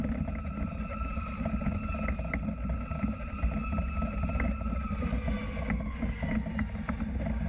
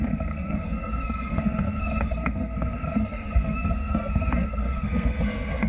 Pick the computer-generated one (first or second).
second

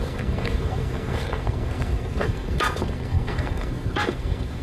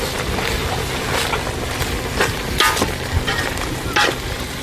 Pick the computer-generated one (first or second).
first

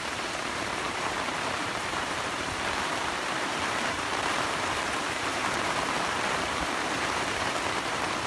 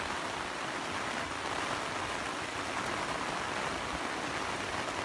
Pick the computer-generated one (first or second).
first